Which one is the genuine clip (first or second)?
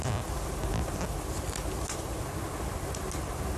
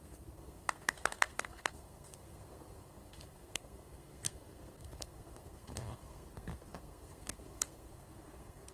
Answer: first